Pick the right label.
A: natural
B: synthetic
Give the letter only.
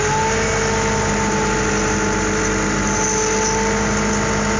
A